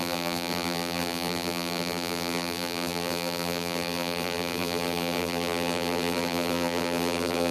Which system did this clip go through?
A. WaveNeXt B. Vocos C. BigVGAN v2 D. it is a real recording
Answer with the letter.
C